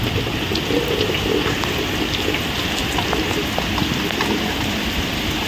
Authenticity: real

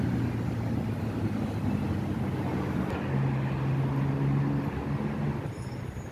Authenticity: real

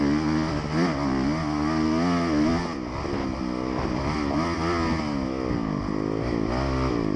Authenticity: real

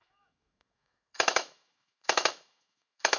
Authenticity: fake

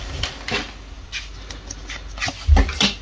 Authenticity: real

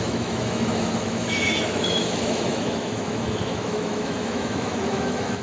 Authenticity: fake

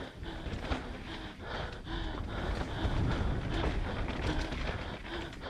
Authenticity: real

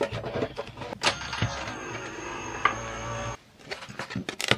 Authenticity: real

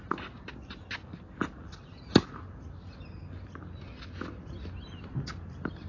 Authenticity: real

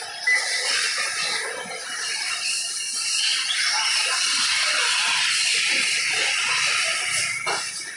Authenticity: real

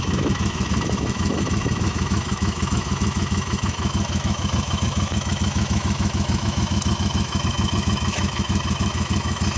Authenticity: fake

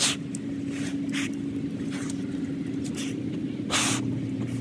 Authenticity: real